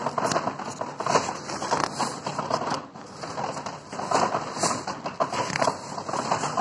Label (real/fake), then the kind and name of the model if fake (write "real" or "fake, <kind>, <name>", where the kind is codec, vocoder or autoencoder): real